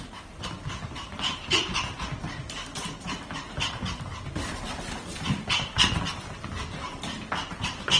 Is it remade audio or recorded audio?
remade